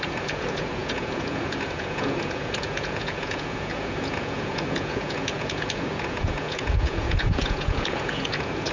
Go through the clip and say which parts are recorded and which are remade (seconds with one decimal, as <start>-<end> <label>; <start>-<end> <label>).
0.0-8.7 remade